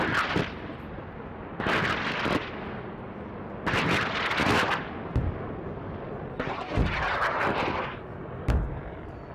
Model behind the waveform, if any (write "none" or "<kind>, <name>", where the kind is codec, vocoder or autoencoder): none